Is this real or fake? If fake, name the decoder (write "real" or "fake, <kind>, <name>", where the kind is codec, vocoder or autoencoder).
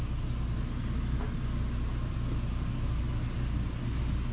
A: real